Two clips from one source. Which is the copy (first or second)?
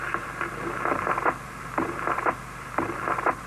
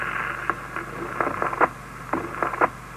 first